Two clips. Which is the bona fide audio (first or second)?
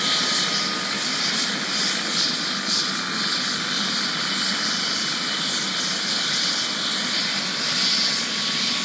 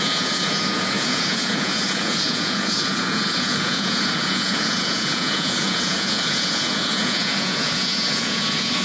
first